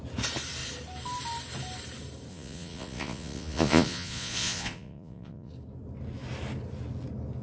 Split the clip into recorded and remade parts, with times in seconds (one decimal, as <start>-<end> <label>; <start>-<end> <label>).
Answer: 0.0-2.3 recorded; 2.3-5.5 remade; 5.5-7.4 recorded